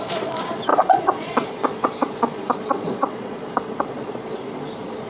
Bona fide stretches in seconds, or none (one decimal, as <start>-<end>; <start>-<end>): none